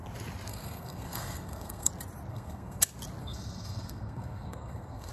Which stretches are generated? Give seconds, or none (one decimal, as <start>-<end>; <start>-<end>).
0.5-1.9; 2.3-2.8; 3.2-5.1